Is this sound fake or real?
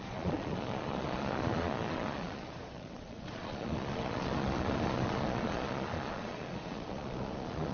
fake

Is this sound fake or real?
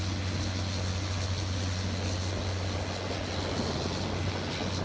real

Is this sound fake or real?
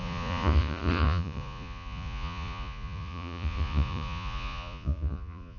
fake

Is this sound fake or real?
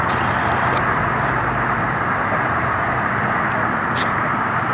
real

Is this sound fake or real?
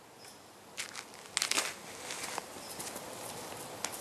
real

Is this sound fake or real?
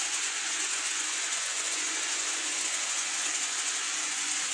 fake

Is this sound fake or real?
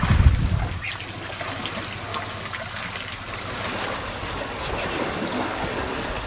real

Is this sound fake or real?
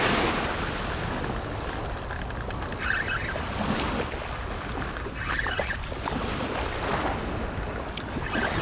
real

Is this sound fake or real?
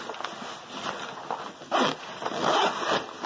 real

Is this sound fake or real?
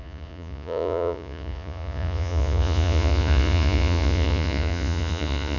fake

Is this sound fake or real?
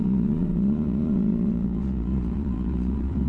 fake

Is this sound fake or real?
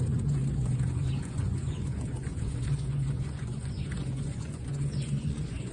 fake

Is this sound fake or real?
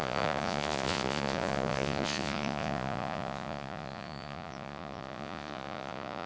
fake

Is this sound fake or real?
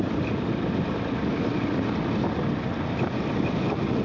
real